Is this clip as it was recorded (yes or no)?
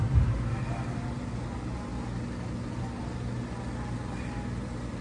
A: yes